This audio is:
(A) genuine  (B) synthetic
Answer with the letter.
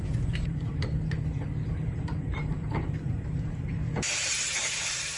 B